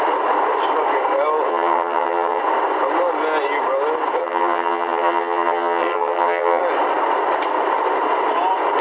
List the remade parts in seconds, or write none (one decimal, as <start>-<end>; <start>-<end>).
1.5-2.4; 4.2-6.6